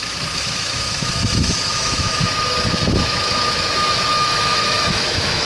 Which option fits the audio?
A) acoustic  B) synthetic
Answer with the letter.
B